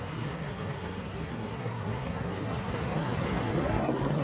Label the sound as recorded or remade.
remade